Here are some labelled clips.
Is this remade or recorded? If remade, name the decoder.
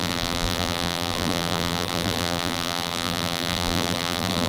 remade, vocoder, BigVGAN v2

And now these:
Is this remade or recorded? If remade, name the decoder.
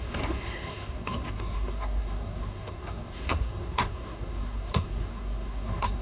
remade, codec, SNAC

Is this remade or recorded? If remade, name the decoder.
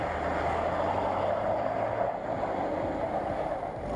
recorded